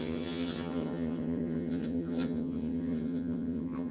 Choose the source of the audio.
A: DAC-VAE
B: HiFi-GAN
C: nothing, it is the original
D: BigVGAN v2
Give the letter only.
B